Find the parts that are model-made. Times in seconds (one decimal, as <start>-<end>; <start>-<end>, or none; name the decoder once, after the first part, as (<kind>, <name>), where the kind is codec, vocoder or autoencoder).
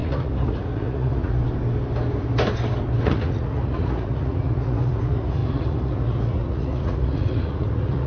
0.0-1.4 (vocoder, Vocos); 3.0-8.1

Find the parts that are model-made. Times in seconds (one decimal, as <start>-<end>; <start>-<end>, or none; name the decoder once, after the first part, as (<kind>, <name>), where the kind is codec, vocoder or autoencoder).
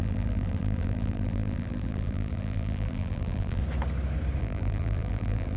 0.0-3.6 (vocoder, BigVGAN v2); 4.4-5.6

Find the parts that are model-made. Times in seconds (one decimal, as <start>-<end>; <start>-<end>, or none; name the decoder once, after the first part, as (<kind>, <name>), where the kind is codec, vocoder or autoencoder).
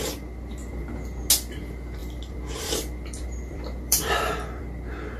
2.0-4.6 (vocoder, BigVGAN v2)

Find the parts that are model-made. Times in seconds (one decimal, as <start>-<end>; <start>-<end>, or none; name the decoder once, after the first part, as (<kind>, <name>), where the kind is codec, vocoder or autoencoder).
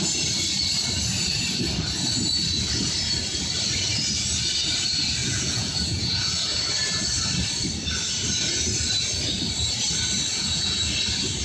5.2-6.6 (vocoder, Vocos); 10.3-10.9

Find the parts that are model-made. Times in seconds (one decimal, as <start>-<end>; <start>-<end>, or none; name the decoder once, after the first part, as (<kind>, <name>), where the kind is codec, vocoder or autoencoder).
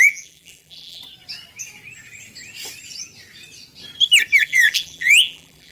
0.0-1.0 (vocoder, BigVGAN v2); 4.4-5.7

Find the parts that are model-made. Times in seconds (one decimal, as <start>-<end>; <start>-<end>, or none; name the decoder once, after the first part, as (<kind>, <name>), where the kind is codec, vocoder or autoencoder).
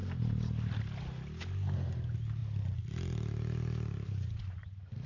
none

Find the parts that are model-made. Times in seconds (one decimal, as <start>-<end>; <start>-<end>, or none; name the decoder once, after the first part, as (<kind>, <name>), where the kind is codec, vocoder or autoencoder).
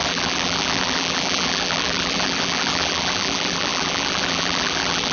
0.0-5.1 (vocoder, BigVGAN v2)